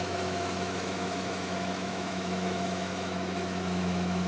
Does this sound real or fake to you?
fake